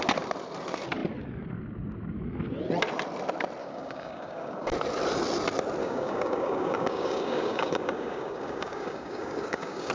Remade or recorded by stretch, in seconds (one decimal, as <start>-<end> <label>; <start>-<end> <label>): 0.0-3.6 recorded; 3.6-4.7 remade; 4.7-5.8 recorded; 5.8-9.9 remade